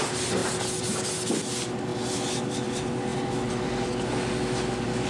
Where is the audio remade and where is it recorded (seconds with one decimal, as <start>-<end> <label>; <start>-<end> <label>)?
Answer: 0.0-5.1 recorded